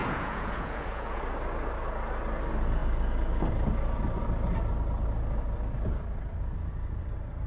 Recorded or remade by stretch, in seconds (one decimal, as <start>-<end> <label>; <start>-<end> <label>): 0.0-1.2 remade; 1.2-7.5 recorded